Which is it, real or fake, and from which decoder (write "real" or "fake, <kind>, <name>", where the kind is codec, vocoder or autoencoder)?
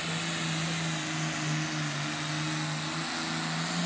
real